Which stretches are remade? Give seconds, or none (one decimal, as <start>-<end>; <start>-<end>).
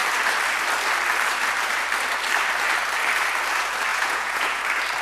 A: 3.9-4.6